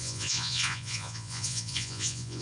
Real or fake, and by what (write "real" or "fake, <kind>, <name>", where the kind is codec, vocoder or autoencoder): fake, vocoder, Vocos